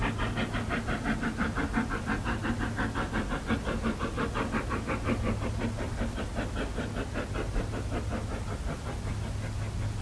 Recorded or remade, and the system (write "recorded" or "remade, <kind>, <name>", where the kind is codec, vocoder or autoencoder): recorded